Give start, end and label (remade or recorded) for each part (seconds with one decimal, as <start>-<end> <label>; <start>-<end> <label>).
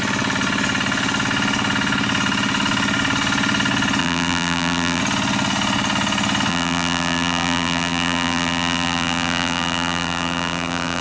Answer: 0.0-4.0 recorded; 4.0-5.0 remade; 5.0-6.5 recorded; 6.5-11.0 remade